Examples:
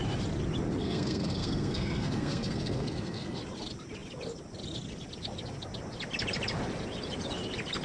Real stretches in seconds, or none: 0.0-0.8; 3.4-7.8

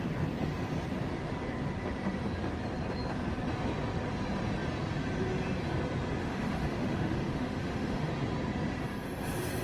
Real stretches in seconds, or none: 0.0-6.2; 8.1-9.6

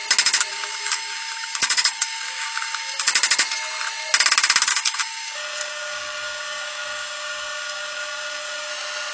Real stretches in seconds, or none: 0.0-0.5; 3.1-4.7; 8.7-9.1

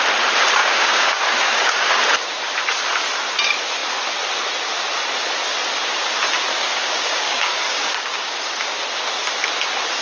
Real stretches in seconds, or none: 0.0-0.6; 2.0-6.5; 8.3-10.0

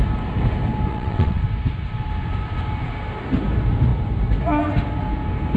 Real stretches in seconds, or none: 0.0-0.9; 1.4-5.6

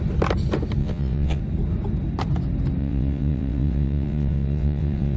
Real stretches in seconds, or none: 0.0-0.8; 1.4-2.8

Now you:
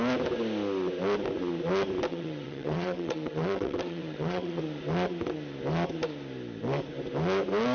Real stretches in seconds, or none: 0.0-2.1; 4.6-7.7